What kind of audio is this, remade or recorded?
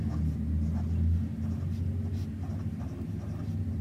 recorded